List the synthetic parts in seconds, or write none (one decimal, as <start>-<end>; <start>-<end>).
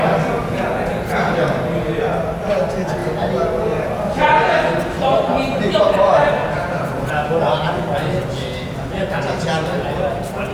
none